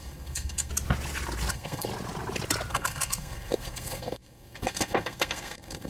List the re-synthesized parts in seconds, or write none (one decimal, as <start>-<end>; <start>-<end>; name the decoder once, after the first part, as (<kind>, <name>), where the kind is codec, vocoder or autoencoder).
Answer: 0.0-0.7 (codec, SNAC); 1.5-1.9; 2.7-5.9